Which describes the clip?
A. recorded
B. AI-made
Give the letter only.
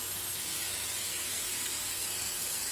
B